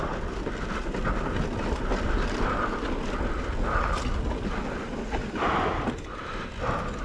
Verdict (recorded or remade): recorded